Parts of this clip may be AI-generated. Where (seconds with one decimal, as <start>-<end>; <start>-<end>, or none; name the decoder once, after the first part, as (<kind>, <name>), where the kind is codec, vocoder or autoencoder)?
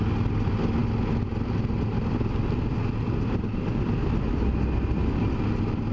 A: none